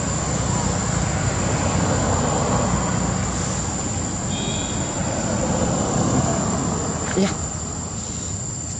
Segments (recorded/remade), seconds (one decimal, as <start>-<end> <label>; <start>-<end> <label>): 0.0-5.0 recorded; 5.0-6.2 remade; 6.2-8.8 recorded